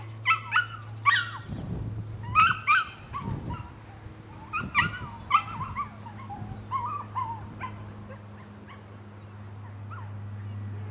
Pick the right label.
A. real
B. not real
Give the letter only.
A